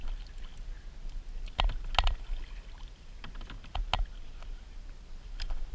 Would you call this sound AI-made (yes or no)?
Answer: no